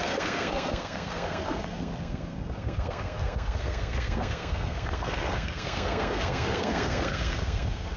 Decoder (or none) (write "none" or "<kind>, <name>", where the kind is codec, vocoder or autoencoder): codec, SNAC